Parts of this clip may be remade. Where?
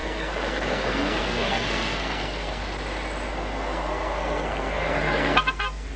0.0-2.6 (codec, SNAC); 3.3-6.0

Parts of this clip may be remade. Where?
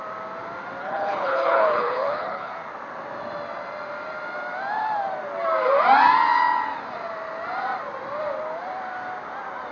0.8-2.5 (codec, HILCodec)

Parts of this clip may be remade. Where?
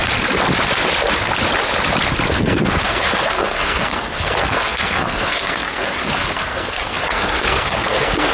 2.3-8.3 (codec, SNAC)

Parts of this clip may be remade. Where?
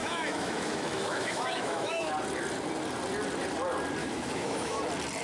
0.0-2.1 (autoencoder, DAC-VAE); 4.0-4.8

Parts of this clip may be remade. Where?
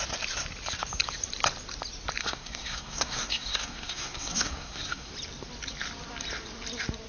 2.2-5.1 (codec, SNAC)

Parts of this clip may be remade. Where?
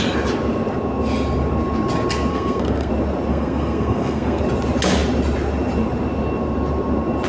2.3-2.9 (codec, SNAC); 3.3-4.4